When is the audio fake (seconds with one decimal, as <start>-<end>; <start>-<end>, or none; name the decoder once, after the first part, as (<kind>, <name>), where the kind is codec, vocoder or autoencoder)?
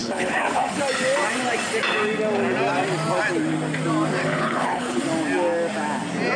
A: 0.0-0.8 (codec, HILCodec); 4.2-5.0